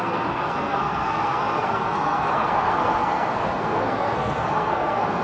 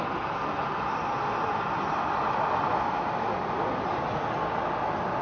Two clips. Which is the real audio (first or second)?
second